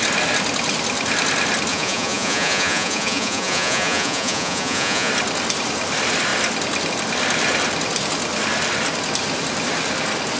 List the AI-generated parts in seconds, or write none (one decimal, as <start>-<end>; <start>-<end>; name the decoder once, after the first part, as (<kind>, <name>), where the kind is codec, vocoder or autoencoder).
1.7-5.1 (vocoder, Vocos)